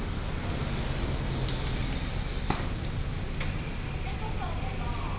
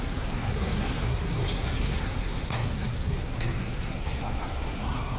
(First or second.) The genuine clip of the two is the first